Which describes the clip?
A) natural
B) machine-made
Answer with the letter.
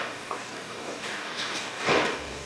B